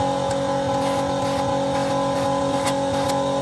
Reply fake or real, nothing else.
real